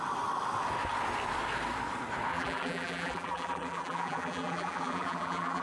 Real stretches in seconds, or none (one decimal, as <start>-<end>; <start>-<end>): 0.0-2.3